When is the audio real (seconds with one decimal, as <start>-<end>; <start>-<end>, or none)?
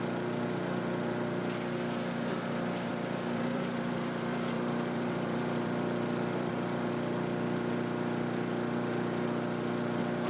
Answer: 0.0-2.9; 6.5-10.3